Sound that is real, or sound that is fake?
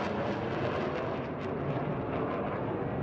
real